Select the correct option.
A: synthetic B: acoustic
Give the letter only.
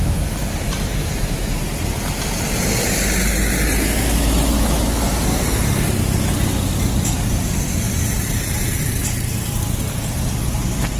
B